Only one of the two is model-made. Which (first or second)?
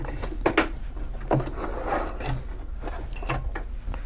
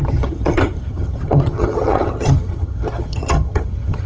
second